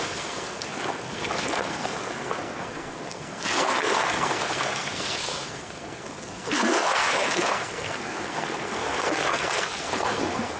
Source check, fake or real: fake